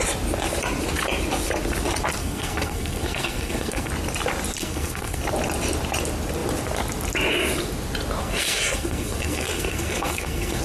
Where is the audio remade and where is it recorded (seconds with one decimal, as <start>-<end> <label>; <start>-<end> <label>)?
0.0-2.2 recorded; 2.2-3.9 remade; 3.9-4.6 recorded; 4.6-5.2 remade; 5.2-8.2 recorded; 8.2-10.6 remade